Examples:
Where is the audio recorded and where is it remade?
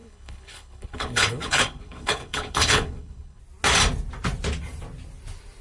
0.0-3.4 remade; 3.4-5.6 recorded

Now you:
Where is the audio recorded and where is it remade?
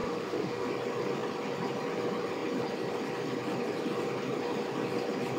0.0-0.7 remade; 0.7-5.4 recorded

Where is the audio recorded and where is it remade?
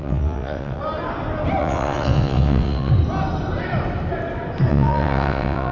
0.0-0.8 remade; 0.8-1.6 recorded; 1.6-2.9 remade; 2.9-4.7 recorded; 4.7-5.7 remade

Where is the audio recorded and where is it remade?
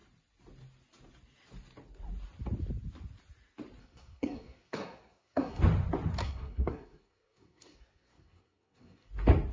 0.0-3.8 recorded; 3.8-5.6 remade; 5.6-6.2 recorded; 6.2-9.1 remade; 9.1-9.5 recorded